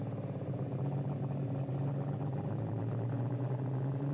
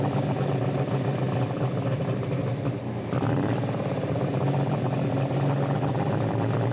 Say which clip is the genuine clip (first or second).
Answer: first